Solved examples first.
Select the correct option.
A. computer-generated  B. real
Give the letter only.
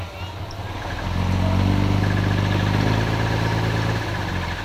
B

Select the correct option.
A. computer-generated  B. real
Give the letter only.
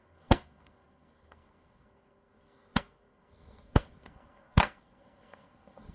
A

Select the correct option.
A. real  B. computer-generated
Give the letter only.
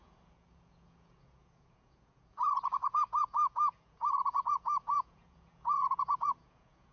B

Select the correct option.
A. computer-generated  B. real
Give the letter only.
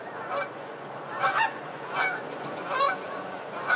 A